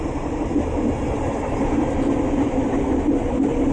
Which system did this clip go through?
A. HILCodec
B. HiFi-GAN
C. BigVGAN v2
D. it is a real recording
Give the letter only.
D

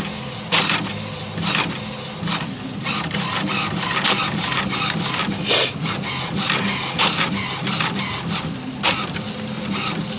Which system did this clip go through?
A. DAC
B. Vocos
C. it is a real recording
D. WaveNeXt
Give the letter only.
C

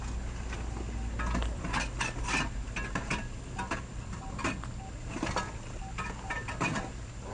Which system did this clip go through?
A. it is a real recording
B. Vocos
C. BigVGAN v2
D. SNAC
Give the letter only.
A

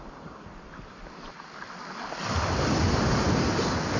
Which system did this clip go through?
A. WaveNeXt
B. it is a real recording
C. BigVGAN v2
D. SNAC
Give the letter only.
B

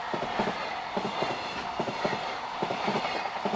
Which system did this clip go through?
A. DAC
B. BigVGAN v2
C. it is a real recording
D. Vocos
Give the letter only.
C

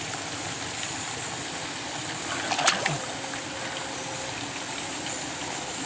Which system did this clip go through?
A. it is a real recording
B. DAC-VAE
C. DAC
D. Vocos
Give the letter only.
A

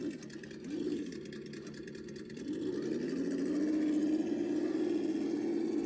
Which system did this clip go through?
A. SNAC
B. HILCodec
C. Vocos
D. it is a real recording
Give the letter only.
D